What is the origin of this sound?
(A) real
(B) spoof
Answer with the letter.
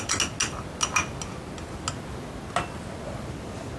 A